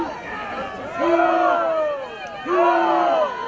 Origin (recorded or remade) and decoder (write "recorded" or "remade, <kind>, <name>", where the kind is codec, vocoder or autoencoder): recorded